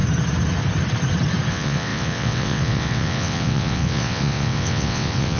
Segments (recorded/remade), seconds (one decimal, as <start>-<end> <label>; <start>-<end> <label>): 0.0-1.5 recorded; 1.5-5.4 remade